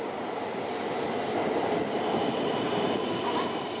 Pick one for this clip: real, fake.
real